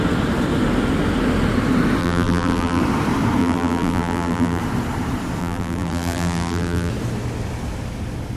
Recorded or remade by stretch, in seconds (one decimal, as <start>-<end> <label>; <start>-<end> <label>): 0.0-2.0 recorded; 2.0-2.8 remade; 2.8-3.4 recorded; 3.4-4.6 remade; 4.6-5.4 recorded; 5.4-6.9 remade; 6.9-8.4 recorded